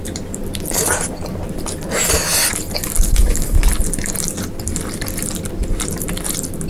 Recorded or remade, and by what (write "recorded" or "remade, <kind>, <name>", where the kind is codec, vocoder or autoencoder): recorded